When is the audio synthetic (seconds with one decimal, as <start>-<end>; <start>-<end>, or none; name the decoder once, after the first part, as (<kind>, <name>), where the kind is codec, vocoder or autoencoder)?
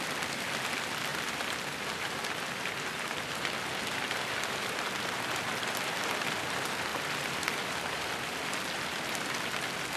none